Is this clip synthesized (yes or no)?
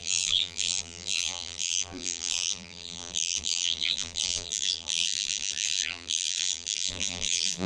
yes